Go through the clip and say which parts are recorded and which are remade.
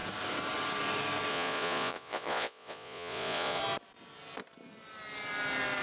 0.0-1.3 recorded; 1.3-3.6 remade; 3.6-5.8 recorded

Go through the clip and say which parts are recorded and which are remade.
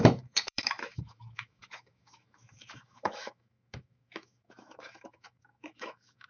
0.0-6.3 remade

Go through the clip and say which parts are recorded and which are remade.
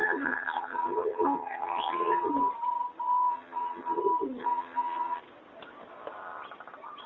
0.0-2.3 remade; 2.3-3.3 recorded; 3.3-4.0 remade; 4.0-4.4 recorded; 4.4-5.2 remade; 5.2-7.1 recorded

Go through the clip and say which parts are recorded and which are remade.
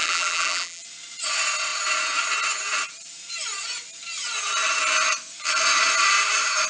0.0-0.8 remade; 0.8-6.7 recorded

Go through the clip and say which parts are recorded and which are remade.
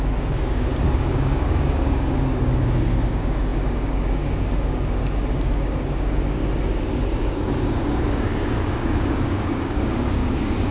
0.0-6.4 remade; 6.4-7.2 recorded; 7.2-10.7 remade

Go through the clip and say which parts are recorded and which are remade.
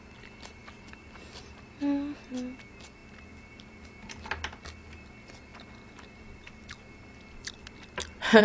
0.0-8.4 recorded